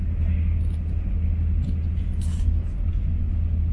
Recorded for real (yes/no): yes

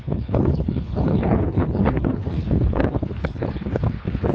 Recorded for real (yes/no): no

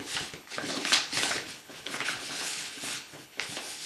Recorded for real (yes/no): no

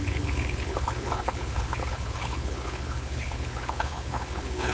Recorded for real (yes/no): no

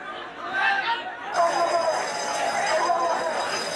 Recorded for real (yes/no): yes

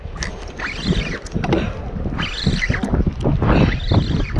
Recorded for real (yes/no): yes